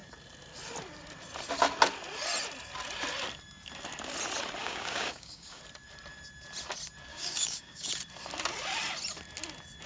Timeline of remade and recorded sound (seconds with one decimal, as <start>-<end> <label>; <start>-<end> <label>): 0.0-4.6 recorded; 4.6-5.6 remade; 5.6-7.1 recorded; 7.1-7.9 remade; 7.9-9.9 recorded